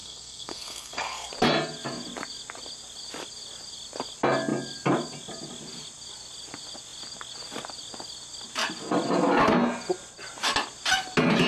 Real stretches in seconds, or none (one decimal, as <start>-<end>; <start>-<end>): 1.3-11.5